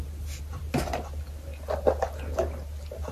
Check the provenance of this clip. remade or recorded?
recorded